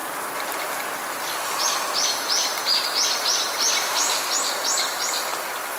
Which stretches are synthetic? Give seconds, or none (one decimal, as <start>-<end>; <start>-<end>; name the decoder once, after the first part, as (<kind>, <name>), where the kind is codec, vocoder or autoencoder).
none